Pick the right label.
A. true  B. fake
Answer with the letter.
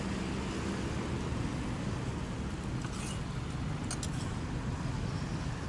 A